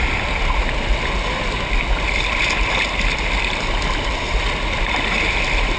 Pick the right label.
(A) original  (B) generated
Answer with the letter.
A